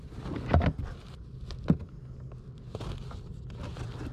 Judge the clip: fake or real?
real